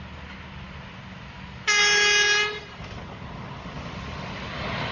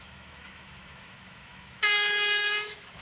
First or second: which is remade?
second